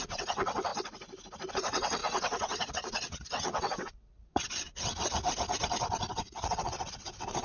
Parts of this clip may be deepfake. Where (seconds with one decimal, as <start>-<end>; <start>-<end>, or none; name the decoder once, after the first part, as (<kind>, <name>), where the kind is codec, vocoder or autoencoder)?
0.0-0.7 (vocoder, WaveNeXt); 1.5-4.7; 6.1-7.4